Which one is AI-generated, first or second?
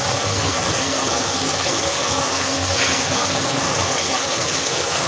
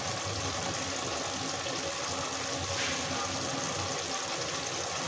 first